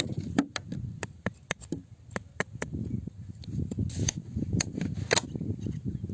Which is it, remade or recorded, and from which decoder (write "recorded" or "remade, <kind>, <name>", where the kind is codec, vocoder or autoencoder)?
recorded